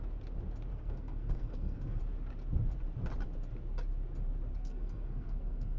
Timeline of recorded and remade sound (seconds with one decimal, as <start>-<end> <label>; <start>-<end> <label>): 0.0-0.7 recorded; 0.7-2.0 remade; 2.0-4.6 recorded; 4.6-5.8 remade